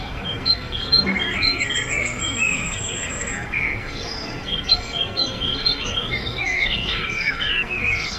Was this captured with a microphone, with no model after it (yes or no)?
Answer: no